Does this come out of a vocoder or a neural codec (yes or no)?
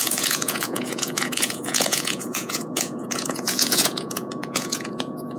yes